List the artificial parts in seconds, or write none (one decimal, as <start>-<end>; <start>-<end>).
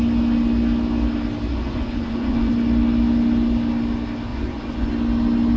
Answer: 1.5-2.5; 4.3-4.9